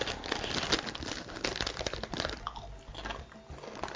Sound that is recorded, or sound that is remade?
recorded